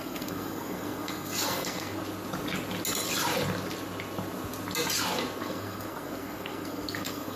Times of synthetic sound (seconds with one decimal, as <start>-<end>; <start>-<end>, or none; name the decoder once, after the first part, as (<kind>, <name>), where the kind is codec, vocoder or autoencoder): 0.0-2.0 (codec, SNAC); 5.4-7.4